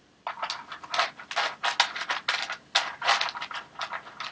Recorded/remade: recorded